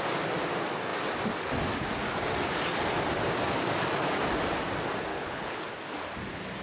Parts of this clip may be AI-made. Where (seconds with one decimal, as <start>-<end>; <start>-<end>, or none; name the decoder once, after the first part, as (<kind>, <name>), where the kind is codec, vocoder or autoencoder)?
5.1-5.7 (codec, HILCodec)